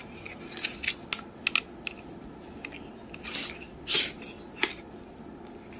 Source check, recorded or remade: recorded